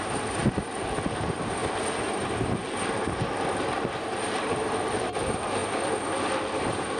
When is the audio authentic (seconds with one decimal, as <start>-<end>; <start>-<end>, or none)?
0.4-1.2; 1.6-2.1; 5.6-6.6